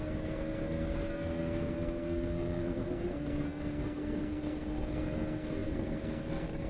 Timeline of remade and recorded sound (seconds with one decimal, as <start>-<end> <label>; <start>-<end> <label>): 0.0-6.7 remade